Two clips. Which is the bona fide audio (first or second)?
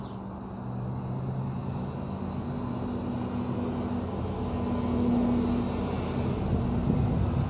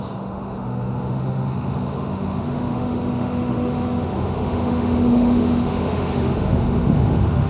first